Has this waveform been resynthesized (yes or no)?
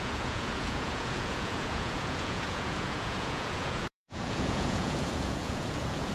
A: yes